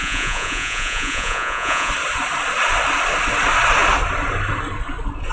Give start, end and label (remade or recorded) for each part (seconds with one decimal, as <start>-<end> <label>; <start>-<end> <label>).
0.0-1.9 remade; 1.9-5.3 recorded